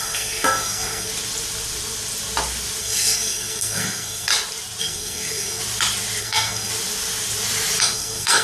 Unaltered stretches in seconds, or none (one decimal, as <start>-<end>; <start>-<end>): 1.1-2.8; 4.3-4.8; 5.6-6.2; 6.7-7.8